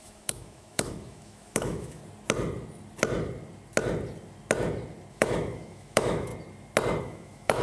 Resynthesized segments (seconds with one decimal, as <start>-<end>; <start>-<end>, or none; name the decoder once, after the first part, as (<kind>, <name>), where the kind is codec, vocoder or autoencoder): 0.0-2.0 (autoencoder, DAC-VAE); 5.1-6.3; 7.0-7.6